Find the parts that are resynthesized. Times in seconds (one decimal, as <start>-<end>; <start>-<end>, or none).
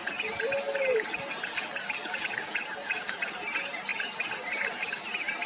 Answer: none